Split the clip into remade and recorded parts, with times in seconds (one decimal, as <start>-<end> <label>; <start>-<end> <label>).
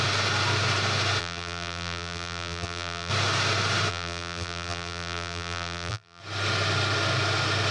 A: 0.0-1.2 recorded; 1.2-3.1 remade; 3.1-3.9 recorded; 3.9-6.2 remade; 6.2-7.7 recorded